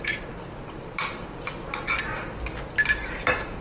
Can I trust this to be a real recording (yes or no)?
yes